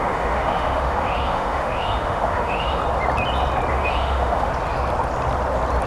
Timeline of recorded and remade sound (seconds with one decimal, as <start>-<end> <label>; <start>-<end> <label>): 0.0-2.8 remade; 2.8-3.7 recorded; 3.7-4.5 remade; 4.5-5.9 recorded